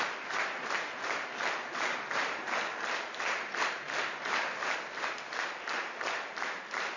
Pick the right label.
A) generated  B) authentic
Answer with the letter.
A